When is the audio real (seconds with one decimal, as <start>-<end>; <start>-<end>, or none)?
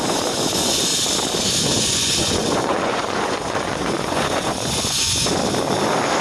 0.9-1.6; 5.4-6.2